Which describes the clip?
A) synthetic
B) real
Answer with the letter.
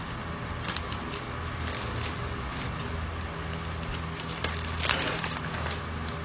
B